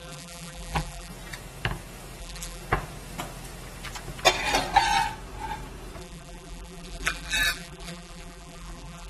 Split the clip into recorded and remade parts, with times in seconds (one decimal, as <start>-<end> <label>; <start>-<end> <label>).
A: 0.0-1.1 remade; 1.1-2.2 recorded; 2.2-2.6 remade; 2.6-6.0 recorded; 6.0-9.1 remade